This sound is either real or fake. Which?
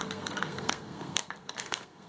fake